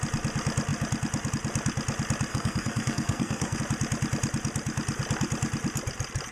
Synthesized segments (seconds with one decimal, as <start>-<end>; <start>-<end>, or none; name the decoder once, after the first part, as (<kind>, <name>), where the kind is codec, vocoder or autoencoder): 2.3-3.6 (codec, SNAC)